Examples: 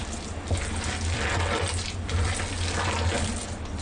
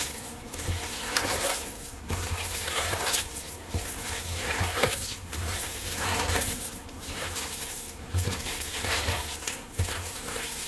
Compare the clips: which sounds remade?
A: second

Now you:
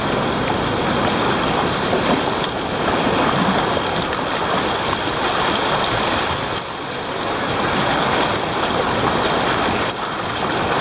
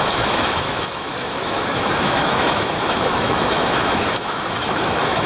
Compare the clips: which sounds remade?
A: second